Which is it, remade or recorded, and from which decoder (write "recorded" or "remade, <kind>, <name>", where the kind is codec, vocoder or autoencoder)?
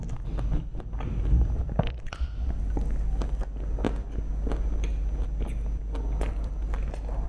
recorded